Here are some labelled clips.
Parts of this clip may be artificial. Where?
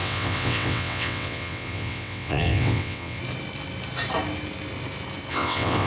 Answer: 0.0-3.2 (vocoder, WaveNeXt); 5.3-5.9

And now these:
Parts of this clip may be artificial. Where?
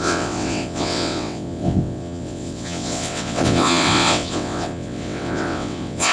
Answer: 0.0-6.1 (vocoder, WaveNeXt)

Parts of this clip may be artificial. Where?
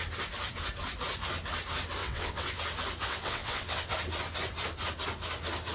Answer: 2.0-2.6 (vocoder, WaveNeXt); 3.0-3.9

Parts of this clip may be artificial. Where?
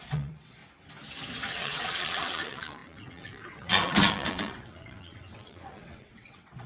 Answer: 0.0-0.6 (vocoder, WaveNeXt); 1.5-6.7